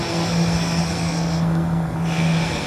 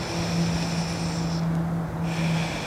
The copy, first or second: first